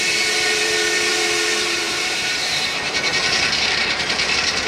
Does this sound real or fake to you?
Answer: fake